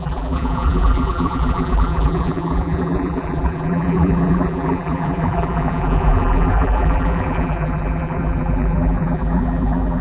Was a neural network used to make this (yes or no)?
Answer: yes